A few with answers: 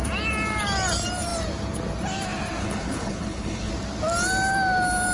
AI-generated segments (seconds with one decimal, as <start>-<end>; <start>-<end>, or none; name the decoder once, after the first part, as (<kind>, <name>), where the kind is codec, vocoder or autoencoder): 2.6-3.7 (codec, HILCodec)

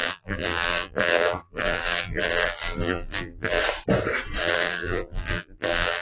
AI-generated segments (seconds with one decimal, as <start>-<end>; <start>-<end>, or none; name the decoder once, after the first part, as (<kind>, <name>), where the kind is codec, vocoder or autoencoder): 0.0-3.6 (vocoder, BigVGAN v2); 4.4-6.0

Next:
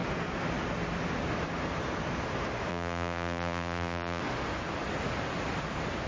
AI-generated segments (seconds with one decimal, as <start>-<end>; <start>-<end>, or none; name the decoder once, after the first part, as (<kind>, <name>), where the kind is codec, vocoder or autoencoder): 2.7-4.2 (vocoder, BigVGAN v2)

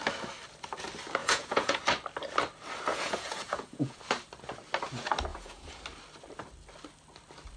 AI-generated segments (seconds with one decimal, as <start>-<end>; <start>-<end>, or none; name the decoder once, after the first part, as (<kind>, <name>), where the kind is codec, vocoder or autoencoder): 1.2-1.8 (vocoder, Vocos); 2.9-4.0; 5.3-5.8

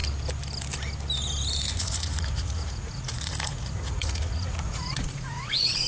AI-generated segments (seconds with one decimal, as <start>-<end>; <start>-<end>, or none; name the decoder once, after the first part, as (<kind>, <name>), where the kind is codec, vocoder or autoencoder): 1.7-5.9 (vocoder, Vocos)

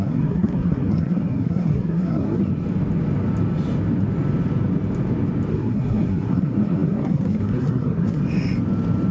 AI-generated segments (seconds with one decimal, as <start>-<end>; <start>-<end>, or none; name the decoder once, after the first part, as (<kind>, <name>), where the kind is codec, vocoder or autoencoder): 0.0-2.5 (codec, SNAC); 5.5-8.2

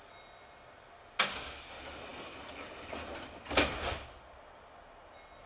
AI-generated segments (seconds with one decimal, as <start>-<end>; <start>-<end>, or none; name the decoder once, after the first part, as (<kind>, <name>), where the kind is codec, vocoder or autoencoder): none

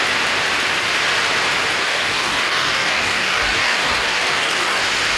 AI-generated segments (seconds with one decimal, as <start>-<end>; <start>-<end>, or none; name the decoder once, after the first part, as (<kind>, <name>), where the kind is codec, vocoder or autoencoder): 1.8-4.8 (codec, DAC)